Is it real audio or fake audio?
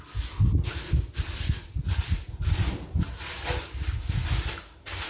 real